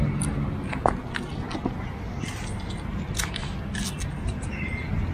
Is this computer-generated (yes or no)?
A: no